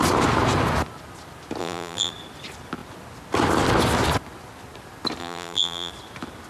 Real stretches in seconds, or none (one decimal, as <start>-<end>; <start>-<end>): 0.0-1.6; 2.1-5.2; 5.9-6.5